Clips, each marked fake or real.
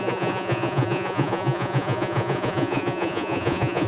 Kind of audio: fake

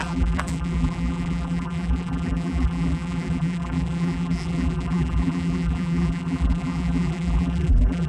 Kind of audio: fake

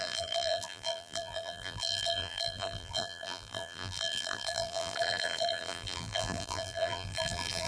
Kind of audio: fake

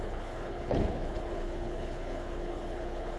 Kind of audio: fake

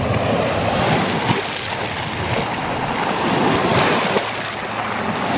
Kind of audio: real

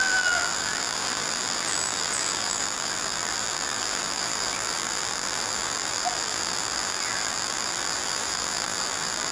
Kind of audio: fake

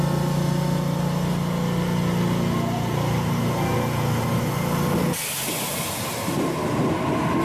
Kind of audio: real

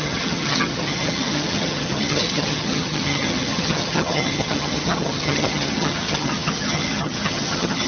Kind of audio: fake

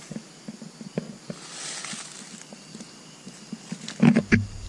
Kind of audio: real